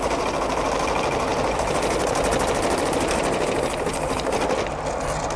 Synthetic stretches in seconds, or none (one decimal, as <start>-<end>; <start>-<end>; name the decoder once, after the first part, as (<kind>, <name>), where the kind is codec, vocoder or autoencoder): none